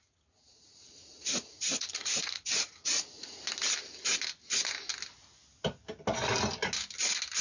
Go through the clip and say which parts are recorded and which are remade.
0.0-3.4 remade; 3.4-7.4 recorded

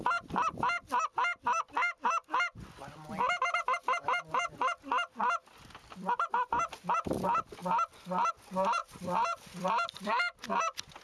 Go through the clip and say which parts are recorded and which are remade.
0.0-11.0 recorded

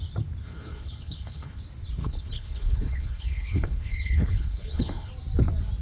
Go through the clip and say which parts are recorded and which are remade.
0.0-0.4 recorded; 0.4-1.6 remade; 1.6-2.0 recorded; 2.0-5.1 remade; 5.1-5.8 recorded

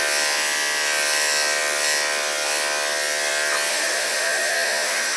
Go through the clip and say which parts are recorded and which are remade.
0.0-3.7 recorded; 3.7-5.2 remade